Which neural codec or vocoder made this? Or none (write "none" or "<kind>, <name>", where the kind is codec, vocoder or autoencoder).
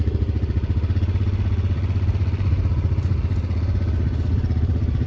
none